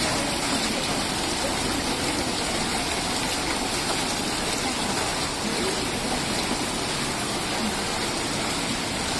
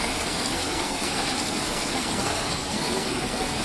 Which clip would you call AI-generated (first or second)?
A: second